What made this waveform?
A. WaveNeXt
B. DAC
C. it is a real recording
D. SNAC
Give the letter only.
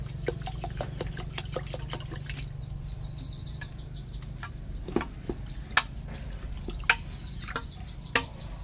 C